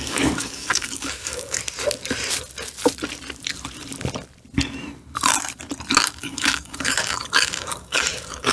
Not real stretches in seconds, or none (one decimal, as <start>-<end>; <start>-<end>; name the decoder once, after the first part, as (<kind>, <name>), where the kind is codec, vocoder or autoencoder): 0.0-1.6 (codec, DAC); 6.2-8.5

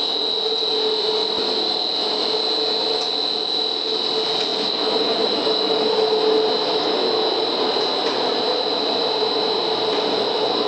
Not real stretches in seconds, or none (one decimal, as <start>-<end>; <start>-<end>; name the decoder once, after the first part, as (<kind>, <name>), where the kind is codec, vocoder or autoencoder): none

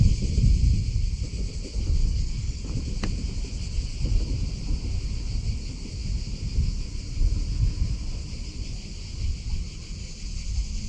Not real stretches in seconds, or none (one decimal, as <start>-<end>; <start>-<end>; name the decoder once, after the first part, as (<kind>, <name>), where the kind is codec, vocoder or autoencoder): 2.0-2.7 (codec, DAC)

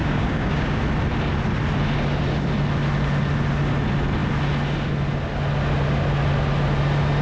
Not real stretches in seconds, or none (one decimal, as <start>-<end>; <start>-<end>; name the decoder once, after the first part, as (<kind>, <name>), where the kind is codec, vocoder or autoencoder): 0.0-0.8 (codec, DAC)

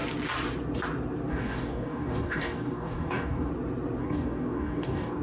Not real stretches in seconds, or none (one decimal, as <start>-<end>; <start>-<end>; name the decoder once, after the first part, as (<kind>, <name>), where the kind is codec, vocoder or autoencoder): 1.3-3.5 (codec, DAC); 4.0-5.2

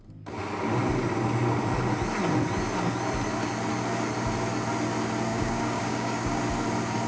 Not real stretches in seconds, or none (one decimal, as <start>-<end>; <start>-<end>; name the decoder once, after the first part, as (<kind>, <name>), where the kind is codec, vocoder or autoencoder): 5.3-6.4 (codec, DAC)